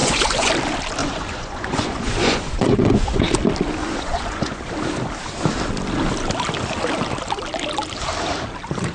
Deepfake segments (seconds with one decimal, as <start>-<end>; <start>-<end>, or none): 0.0-0.5; 1.0-3.2; 3.8-4.6